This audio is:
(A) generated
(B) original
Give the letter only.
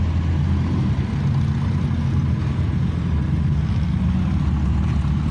B